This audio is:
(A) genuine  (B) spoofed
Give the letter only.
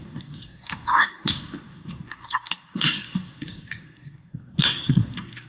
B